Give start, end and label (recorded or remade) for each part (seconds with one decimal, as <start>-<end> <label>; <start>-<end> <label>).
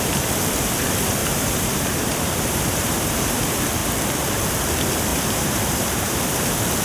0.0-1.2 recorded; 1.2-3.4 remade; 3.4-5.1 recorded; 5.1-6.2 remade; 6.2-6.8 recorded